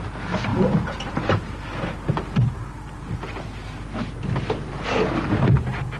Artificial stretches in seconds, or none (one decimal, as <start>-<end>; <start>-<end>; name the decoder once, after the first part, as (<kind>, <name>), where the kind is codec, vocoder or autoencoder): none